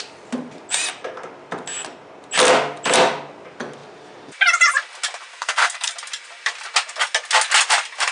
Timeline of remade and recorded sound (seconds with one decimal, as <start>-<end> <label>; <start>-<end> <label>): 0.0-5.3 recorded; 5.3-5.9 remade; 5.9-8.1 recorded